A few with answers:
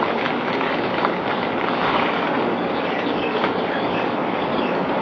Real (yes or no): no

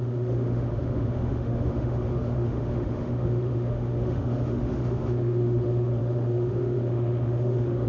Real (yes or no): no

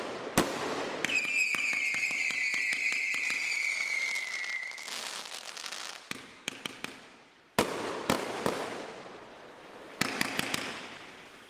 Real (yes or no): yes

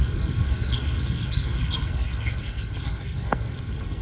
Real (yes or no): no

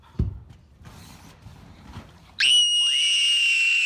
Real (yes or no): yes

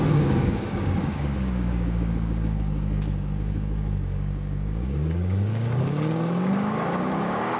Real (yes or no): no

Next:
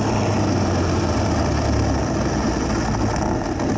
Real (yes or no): yes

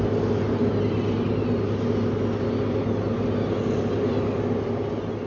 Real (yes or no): yes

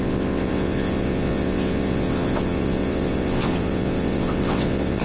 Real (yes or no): no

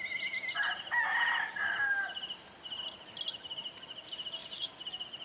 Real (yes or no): yes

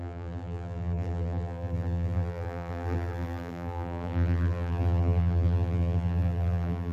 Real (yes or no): no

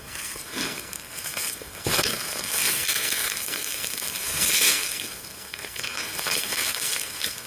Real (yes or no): no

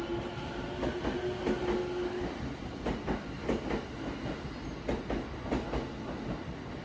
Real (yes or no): yes